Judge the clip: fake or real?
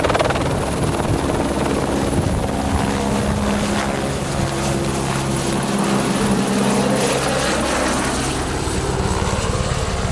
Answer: real